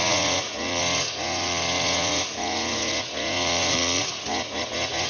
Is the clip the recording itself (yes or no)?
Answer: no